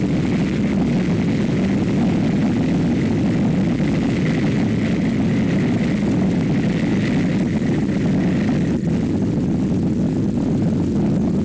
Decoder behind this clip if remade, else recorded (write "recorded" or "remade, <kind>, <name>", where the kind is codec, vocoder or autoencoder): recorded